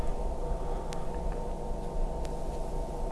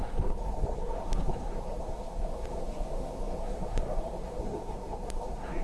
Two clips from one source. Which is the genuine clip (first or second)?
first